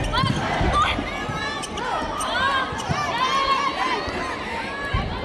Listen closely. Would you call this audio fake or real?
real